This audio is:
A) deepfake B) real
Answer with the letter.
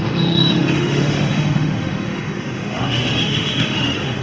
A